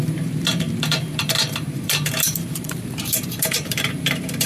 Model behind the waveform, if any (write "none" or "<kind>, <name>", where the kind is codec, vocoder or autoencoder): vocoder, BigVGAN v2